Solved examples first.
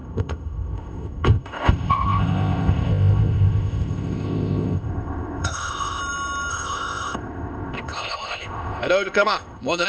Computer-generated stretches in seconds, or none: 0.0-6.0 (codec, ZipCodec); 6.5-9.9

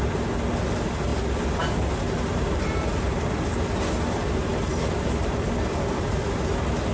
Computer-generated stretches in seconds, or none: none

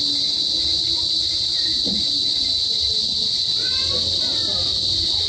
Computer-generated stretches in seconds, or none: none

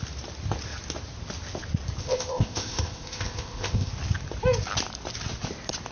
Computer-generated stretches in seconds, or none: 2.0-3.9 (codec, ZipCodec)

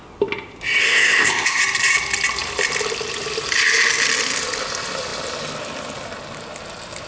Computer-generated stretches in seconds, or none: 0.8-1.6 (codec, ZipCodec)

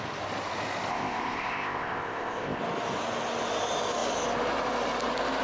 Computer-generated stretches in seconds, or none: 0.9-2.6 (codec, ZipCodec)